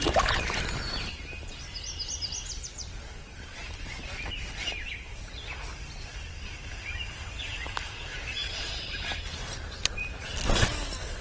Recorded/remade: recorded